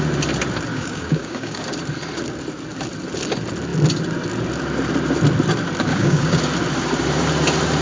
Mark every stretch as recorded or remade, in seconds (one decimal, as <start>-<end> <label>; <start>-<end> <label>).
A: 0.0-0.7 recorded; 0.7-1.6 remade; 1.6-5.9 recorded; 5.9-6.4 remade; 6.4-7.8 recorded